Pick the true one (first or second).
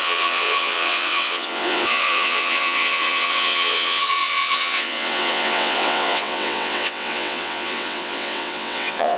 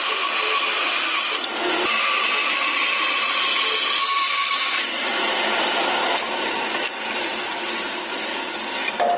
second